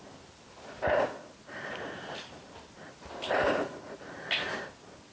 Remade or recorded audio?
recorded